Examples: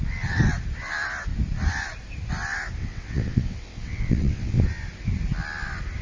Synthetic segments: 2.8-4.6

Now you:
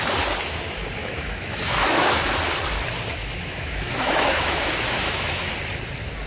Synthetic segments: 1.0-2.4; 3.2-5.5

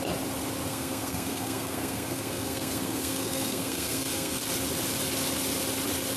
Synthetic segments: 0.7-4.4

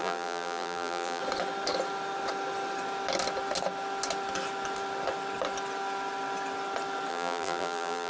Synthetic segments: 0.0-1.2; 7.1-8.1

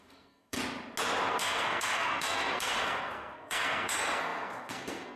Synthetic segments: 0.0-0.6; 1.3-5.2

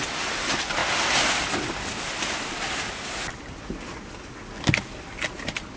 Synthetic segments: none